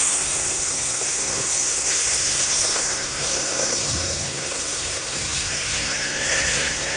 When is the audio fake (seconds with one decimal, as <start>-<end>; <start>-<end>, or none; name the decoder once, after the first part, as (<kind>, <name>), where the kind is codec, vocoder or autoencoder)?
0.0-7.0 (codec, SNAC)